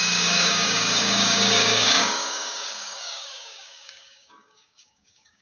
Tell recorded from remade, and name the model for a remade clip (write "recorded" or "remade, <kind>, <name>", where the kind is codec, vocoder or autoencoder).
remade, codec, DAC